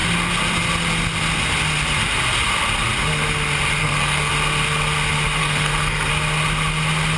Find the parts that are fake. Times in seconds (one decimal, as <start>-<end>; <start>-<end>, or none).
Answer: 3.8-4.3; 5.4-6.1